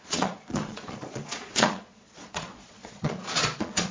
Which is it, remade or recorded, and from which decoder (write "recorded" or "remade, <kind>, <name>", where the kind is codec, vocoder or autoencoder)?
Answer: remade, vocoder, Vocos